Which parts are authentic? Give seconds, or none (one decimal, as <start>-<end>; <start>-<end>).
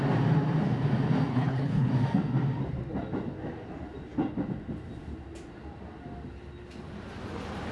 0.0-1.3; 1.9-7.7